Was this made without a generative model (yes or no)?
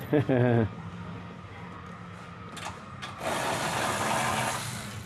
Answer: yes